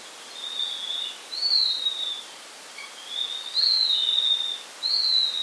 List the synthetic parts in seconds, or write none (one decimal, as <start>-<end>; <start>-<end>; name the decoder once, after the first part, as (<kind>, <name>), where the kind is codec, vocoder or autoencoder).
1.4-2.9 (vocoder, BigVGAN v2)